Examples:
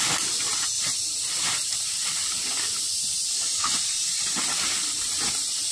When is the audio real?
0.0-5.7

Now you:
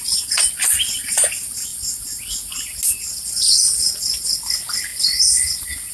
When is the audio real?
0.0-5.9

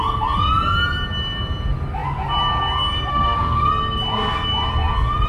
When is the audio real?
0.0-3.1; 3.7-5.3

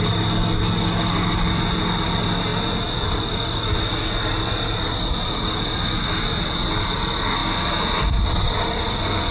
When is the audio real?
0.0-9.3

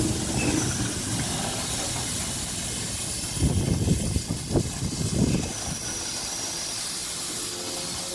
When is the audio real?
0.0-8.1

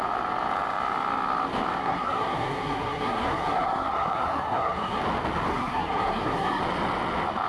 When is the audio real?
0.0-1.8; 5.0-5.5; 6.6-7.5

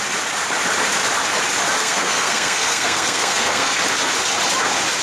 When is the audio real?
0.0-1.8; 3.8-5.0